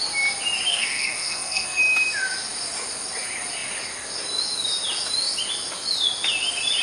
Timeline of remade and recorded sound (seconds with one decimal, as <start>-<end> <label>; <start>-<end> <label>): 0.0-0.7 recorded; 0.7-1.8 remade; 1.8-6.8 recorded